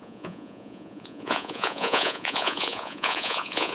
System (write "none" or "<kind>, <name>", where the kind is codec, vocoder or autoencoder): vocoder, Vocos